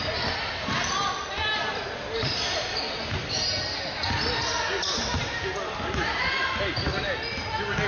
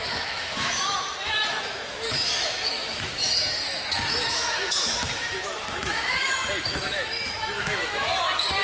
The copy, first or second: second